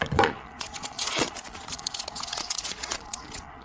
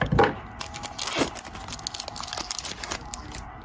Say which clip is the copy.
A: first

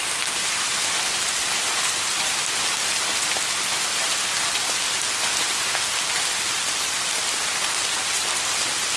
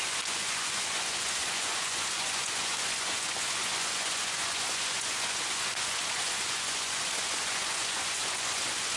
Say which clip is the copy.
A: second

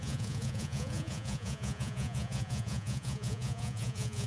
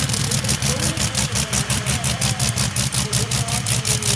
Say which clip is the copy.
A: first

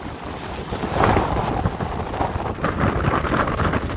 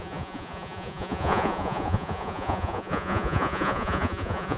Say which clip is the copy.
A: second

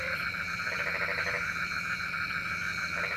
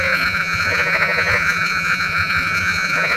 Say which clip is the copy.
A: second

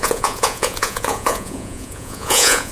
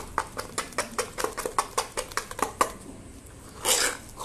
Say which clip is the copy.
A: first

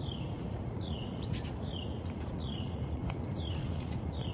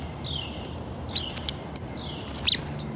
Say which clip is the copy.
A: first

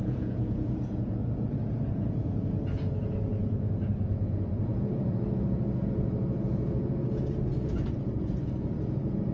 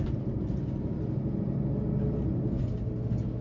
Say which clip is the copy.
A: first